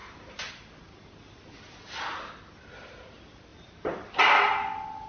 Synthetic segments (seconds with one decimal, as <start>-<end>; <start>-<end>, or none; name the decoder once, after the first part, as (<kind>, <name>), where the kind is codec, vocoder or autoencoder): 0.0-0.5 (vocoder, BigVGAN v2); 3.5-4.1